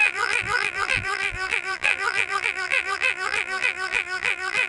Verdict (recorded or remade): remade